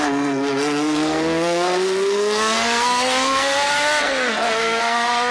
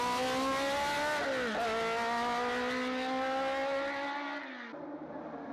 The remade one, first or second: first